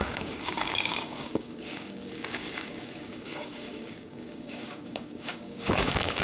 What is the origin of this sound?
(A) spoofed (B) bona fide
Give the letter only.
A